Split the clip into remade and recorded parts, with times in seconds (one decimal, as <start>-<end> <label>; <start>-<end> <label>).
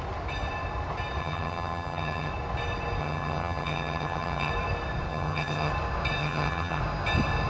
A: 0.0-1.2 recorded; 1.2-2.3 remade; 2.3-3.0 recorded; 3.0-4.5 remade; 4.5-5.1 recorded; 5.1-5.7 remade; 5.7-6.2 recorded; 6.2-6.8 remade; 6.8-7.5 recorded